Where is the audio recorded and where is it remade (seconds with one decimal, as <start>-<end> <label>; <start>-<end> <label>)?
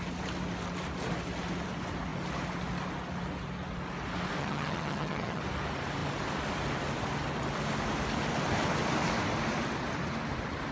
0.0-4.4 recorded; 4.4-5.4 remade; 5.4-10.7 recorded